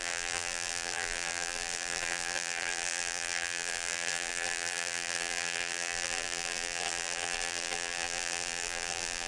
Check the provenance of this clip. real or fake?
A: fake